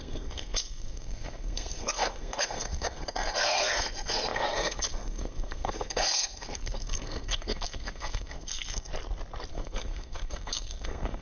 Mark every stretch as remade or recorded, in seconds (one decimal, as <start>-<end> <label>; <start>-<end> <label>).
0.0-8.9 remade; 8.9-9.5 recorded; 9.5-11.2 remade